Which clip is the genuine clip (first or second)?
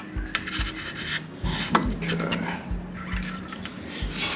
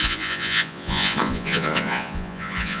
first